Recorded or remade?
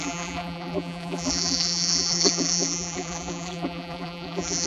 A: remade